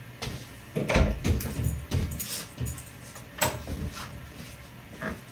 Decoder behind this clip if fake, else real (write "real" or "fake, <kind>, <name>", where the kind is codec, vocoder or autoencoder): real